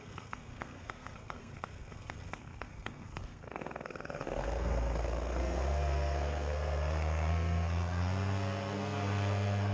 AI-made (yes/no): yes